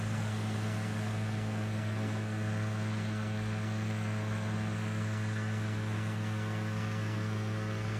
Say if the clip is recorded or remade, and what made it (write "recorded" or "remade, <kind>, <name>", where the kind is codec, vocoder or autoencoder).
remade, codec, SNAC